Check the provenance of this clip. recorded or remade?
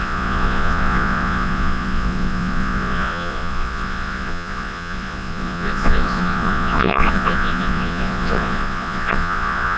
remade